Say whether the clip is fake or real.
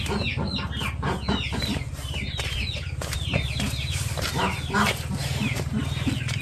real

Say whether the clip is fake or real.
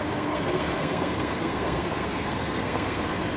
fake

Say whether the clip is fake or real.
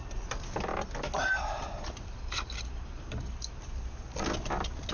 real